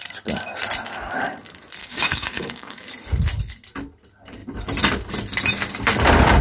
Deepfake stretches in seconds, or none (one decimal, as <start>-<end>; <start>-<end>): 1.8-2.8